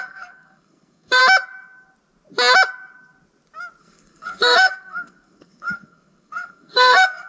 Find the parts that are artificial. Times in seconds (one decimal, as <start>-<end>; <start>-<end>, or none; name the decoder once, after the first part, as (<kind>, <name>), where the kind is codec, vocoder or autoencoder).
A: 0.0-1.2 (codec, SNAC); 3.8-7.3